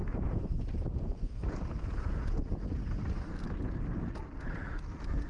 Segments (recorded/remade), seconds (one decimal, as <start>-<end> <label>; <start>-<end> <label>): 0.0-3.0 remade; 3.0-5.3 recorded